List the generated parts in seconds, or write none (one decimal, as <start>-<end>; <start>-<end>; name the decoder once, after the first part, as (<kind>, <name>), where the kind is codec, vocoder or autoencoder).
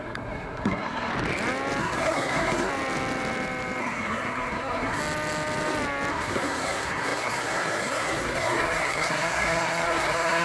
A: 0.0-1.1 (codec, SNAC); 1.8-2.7; 3.8-5.0; 6.1-10.4